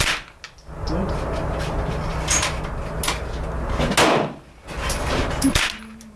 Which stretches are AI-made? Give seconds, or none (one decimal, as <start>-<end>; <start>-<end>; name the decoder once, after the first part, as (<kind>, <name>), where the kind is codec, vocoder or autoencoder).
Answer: none